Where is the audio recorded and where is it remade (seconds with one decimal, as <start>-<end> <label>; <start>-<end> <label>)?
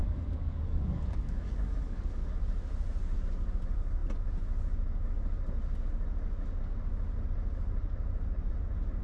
0.0-2.3 remade; 2.3-9.0 recorded